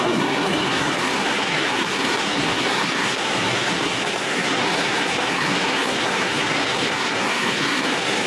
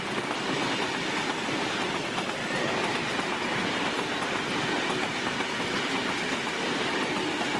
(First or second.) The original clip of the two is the second